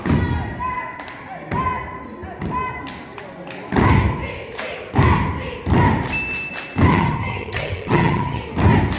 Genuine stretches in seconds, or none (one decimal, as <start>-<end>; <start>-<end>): 0.0-6.9; 8.4-9.0